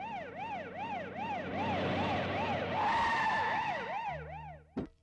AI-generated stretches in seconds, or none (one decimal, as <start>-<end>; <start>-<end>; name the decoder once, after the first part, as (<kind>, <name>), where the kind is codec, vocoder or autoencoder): 3.1-3.7 (autoencoder, DAC-VAE)